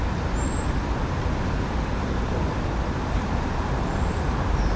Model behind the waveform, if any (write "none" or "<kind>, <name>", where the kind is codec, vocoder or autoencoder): none